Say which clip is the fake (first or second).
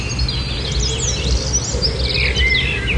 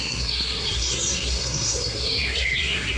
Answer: second